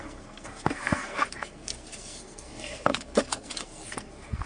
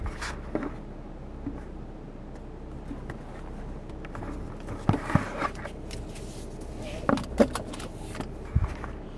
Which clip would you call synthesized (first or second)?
first